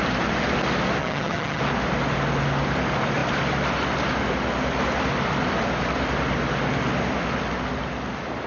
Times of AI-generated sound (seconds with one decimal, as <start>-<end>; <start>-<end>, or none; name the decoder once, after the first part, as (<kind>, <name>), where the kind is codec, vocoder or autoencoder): 1.0-1.6 (vocoder, HiFi-GAN)